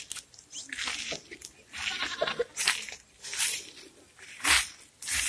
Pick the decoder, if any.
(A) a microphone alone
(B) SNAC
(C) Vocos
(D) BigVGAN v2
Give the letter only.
A